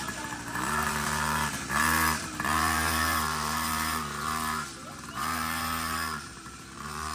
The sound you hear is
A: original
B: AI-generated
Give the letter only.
B